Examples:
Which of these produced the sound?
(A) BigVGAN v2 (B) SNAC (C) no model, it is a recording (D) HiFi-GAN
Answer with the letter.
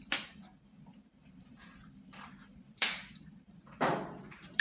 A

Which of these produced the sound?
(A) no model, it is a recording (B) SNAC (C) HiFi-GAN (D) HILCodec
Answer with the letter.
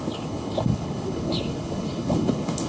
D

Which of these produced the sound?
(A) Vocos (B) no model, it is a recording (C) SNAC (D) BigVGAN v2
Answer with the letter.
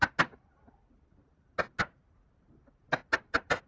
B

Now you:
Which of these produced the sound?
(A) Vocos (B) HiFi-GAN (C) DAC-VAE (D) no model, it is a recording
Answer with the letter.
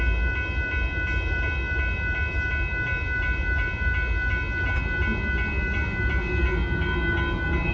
D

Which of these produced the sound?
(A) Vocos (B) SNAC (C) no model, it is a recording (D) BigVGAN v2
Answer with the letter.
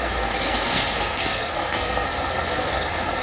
B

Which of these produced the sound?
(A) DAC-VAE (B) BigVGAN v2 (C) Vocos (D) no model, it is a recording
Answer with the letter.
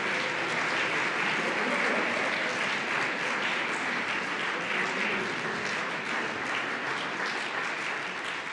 D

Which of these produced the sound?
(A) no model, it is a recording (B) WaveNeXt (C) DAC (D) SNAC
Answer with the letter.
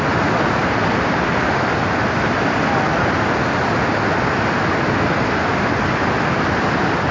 A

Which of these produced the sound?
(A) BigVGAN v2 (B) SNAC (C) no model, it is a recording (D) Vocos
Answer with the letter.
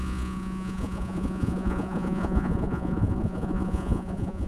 D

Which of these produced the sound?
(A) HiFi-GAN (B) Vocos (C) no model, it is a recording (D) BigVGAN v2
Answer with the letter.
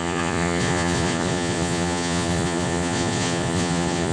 B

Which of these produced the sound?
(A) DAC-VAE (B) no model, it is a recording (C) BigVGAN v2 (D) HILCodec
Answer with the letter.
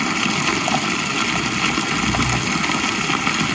B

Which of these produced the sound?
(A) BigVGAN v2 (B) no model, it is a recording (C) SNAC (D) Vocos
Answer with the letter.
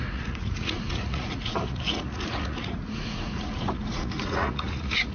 D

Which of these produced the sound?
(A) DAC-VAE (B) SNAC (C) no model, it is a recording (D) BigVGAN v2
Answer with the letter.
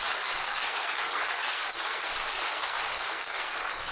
B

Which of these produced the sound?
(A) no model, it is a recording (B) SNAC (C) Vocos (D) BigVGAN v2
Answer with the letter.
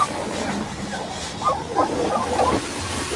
A